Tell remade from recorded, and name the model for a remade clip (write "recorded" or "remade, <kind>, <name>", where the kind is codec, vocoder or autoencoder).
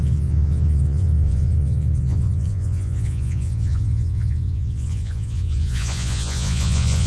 remade, vocoder, Vocos